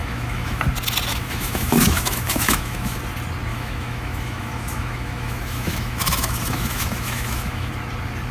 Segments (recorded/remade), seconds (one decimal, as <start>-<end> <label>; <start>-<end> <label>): 0.0-0.6 remade; 0.6-1.1 recorded; 1.1-3.0 remade; 3.0-3.5 recorded; 3.5-7.7 remade; 7.7-8.3 recorded